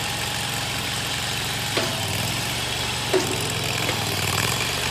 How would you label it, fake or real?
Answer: fake